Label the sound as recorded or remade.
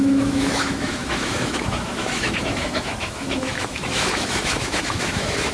remade